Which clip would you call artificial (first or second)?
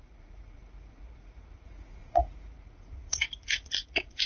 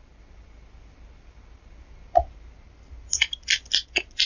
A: first